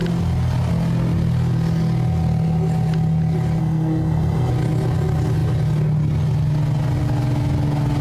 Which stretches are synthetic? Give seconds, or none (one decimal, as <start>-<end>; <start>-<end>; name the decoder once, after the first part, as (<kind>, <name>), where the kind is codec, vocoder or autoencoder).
3.6-4.5 (codec, SNAC)